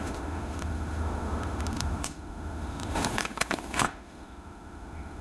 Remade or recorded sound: remade